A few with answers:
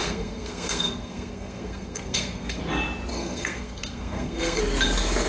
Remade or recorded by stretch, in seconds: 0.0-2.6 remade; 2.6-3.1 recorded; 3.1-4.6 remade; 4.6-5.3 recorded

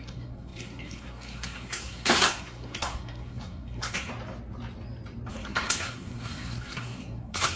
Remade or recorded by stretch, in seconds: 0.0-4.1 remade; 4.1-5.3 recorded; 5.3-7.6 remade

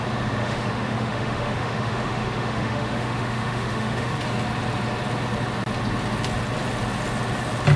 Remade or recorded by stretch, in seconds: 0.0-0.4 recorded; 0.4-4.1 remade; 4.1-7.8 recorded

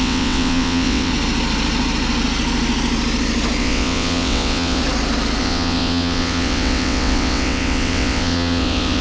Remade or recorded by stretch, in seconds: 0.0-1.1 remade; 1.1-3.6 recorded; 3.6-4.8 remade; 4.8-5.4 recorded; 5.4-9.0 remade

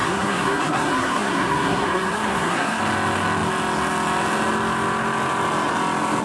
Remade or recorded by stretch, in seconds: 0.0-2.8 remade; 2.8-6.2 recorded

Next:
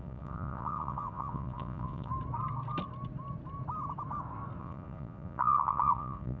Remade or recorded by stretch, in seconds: 0.0-2.1 remade; 2.1-4.6 recorded; 4.6-6.4 remade

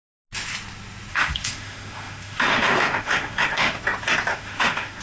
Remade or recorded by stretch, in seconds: 0.0-1.1 recorded; 1.1-3.8 remade; 3.8-4.3 recorded; 4.3-5.0 remade

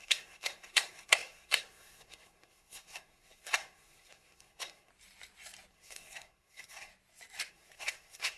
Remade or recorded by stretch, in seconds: 0.0-4.9 remade; 4.9-5.7 recorded; 5.7-6.9 remade; 6.9-7.5 recorded; 7.5-8.4 remade